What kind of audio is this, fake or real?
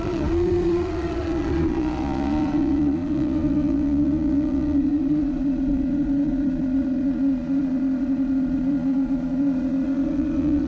fake